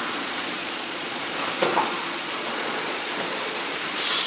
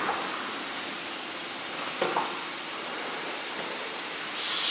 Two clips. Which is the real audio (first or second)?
second